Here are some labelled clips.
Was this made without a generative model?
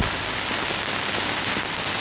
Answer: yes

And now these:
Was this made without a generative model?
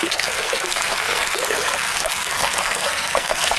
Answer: no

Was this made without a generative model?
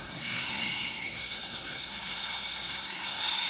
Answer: no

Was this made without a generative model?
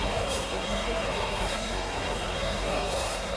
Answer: no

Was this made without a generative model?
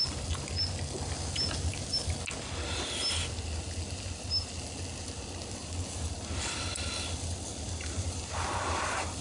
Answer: yes